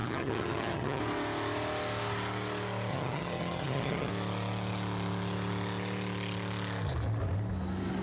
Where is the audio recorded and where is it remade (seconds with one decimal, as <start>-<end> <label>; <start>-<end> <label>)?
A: 0.0-1.0 remade; 1.0-2.9 recorded; 2.9-4.1 remade; 4.1-8.0 recorded